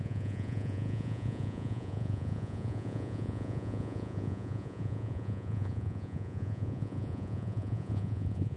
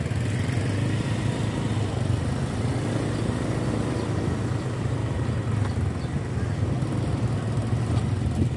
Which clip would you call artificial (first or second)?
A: first